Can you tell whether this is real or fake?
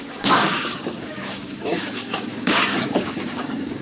fake